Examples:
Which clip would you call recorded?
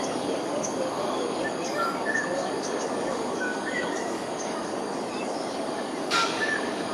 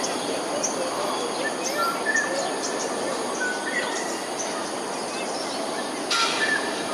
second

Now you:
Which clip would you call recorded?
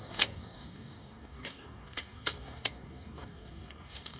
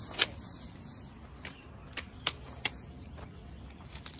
second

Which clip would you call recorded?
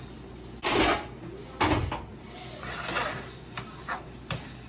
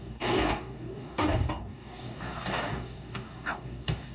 first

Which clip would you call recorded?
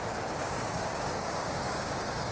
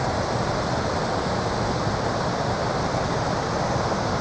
second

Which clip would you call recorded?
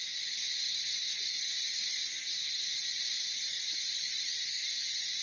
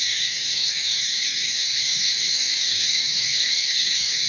first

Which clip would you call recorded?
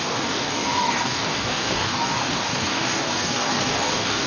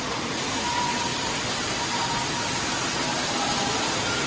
second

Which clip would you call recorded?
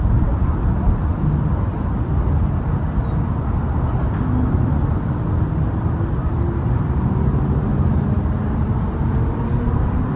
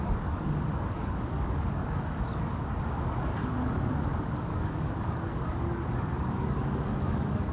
first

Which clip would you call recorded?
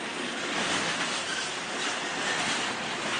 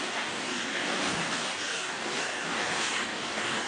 first